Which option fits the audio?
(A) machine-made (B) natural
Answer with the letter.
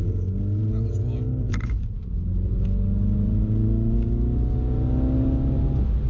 B